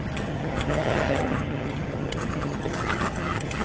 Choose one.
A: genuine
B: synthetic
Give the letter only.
B